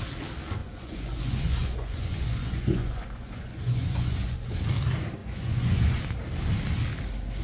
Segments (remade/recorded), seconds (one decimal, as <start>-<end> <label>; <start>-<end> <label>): 0.0-0.6 recorded; 0.6-4.6 remade; 4.6-5.2 recorded; 5.2-6.0 remade; 6.0-7.4 recorded